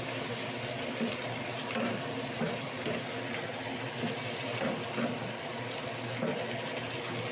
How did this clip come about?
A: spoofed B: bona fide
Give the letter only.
B